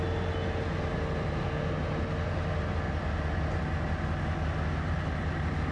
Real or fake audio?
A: real